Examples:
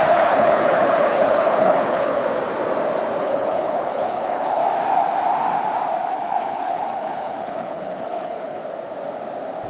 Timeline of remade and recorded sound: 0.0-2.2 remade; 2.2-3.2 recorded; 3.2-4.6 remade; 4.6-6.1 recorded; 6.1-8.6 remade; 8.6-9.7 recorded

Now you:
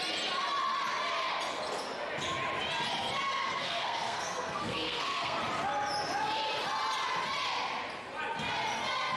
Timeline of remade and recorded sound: 0.0-3.3 recorded; 3.3-5.4 remade; 5.4-9.2 recorded

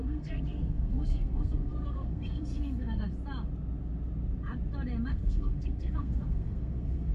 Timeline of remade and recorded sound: 0.0-3.1 remade; 3.1-5.1 recorded; 5.1-7.1 remade

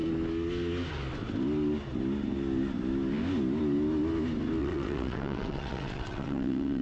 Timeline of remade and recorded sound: 0.0-4.6 recorded; 4.6-6.8 remade

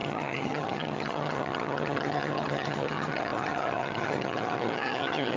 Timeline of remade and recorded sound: 0.0-5.4 remade

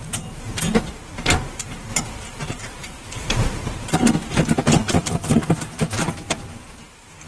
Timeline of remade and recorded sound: 0.0-7.3 recorded